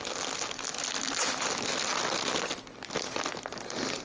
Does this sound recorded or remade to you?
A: recorded